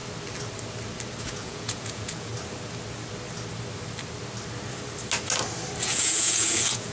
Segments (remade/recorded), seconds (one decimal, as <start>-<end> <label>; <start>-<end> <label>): 0.0-1.2 recorded; 1.2-2.3 remade; 2.3-5.8 recorded; 5.8-6.9 remade